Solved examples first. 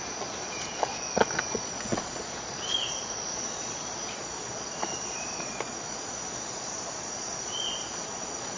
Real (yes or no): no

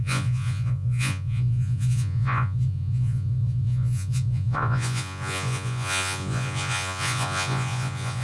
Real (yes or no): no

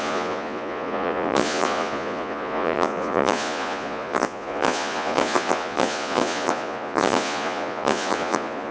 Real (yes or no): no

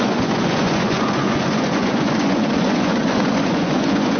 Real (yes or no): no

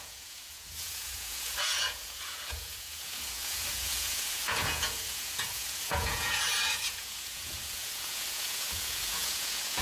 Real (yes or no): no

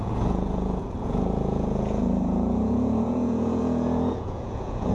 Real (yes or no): no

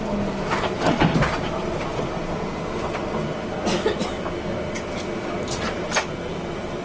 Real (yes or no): yes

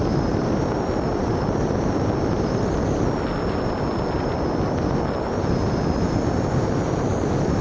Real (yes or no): yes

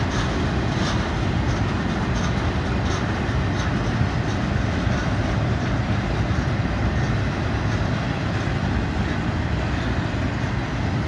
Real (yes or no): yes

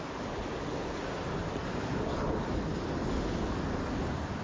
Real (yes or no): yes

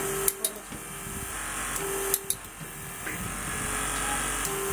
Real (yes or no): yes